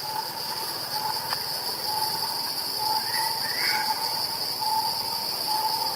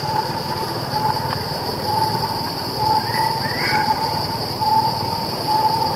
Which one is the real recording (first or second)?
first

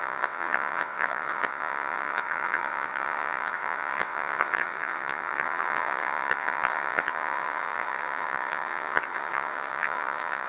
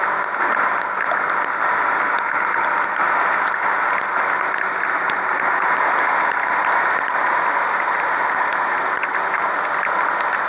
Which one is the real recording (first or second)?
second